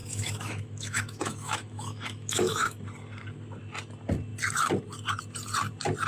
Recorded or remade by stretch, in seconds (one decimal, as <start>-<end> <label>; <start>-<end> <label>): 0.0-2.8 remade; 2.8-6.1 recorded